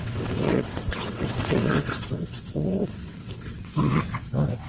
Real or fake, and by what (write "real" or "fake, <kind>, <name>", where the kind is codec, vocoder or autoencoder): fake, vocoder, WaveNeXt